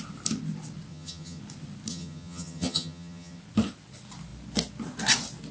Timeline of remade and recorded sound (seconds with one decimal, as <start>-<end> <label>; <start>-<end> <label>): 0.0-0.9 recorded; 0.9-1.4 remade; 1.4-1.9 recorded; 1.9-3.4 remade; 3.4-5.5 recorded